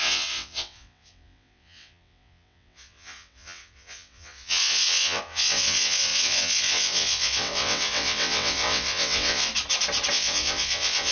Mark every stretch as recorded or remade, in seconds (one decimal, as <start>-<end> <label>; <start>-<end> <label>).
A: 0.0-9.5 remade; 9.5-10.1 recorded; 10.1-11.1 remade